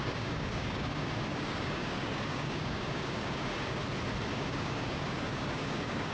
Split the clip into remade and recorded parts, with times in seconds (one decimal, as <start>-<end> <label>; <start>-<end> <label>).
0.0-3.8 remade; 3.8-4.3 recorded; 4.3-6.1 remade